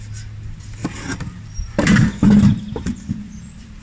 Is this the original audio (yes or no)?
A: yes